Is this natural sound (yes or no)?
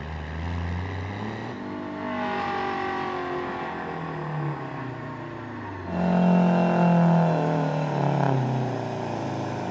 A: yes